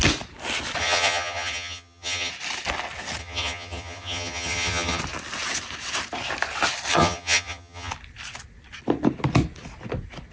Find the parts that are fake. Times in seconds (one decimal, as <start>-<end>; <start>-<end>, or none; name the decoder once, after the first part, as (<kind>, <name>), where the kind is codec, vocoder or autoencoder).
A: 0.8-2.3 (vocoder, HiFi-GAN); 3.2-5.0; 6.9-7.9